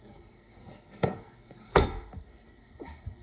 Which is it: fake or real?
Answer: fake